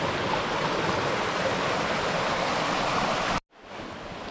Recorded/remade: recorded